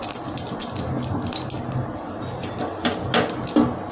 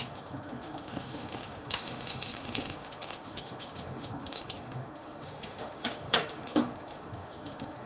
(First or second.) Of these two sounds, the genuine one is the first